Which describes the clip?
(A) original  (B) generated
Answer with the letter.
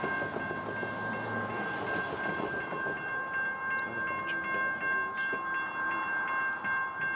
A